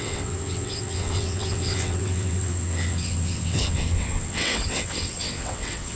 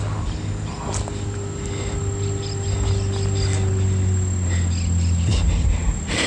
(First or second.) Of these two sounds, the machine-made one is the first